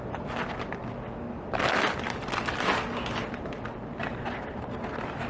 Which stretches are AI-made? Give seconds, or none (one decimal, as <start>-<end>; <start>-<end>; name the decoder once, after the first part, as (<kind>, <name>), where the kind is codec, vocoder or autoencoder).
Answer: none